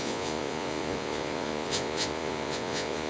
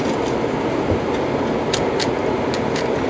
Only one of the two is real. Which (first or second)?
second